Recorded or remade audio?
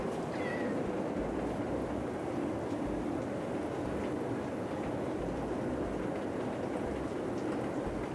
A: recorded